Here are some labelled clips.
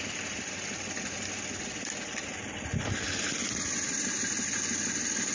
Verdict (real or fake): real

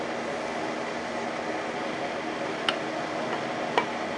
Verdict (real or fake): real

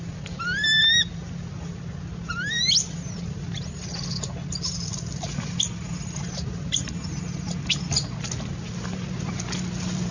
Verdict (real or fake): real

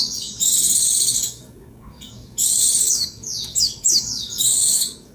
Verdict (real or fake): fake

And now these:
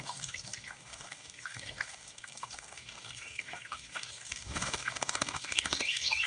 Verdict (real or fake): fake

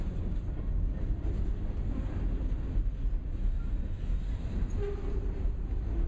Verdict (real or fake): real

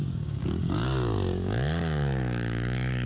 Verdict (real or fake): fake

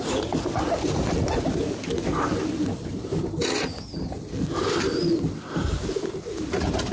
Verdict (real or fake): real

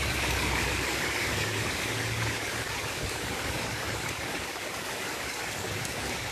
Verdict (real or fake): fake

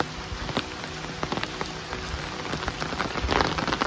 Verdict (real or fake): real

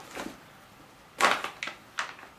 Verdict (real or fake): real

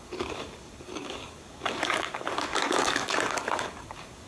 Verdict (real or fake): fake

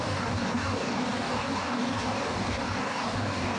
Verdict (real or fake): fake